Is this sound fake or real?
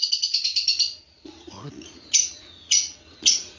fake